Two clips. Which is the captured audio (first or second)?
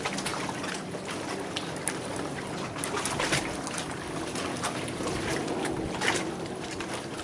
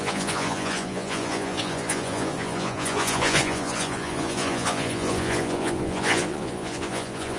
first